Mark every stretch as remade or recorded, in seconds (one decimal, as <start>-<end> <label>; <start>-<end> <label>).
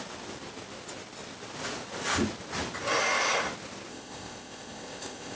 0.0-3.9 recorded; 3.9-5.4 remade